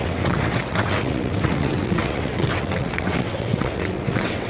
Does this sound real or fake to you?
fake